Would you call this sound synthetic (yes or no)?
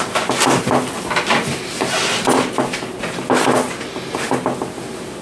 no